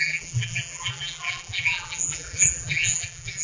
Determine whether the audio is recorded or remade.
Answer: remade